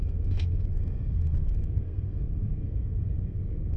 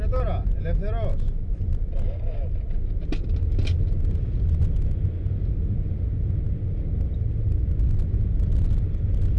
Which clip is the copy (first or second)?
first